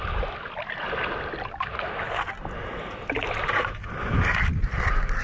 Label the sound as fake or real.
real